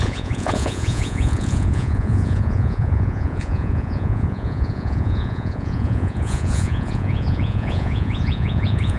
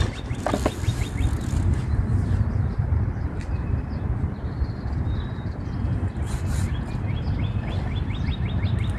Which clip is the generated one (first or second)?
first